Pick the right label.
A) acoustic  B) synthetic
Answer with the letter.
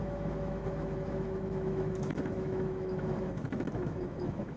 B